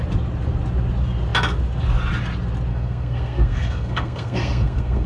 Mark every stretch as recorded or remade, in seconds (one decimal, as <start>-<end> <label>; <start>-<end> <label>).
0.0-2.7 recorded; 2.7-5.1 remade